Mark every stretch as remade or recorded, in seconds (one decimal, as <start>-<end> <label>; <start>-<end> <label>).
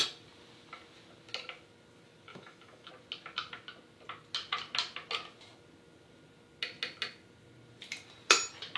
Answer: 0.0-2.3 recorded; 2.3-2.9 remade; 2.9-8.8 recorded